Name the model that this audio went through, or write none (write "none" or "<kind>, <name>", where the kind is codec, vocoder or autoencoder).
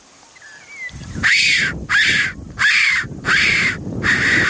none